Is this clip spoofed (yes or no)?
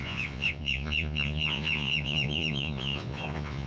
yes